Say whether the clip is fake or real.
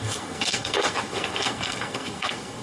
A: fake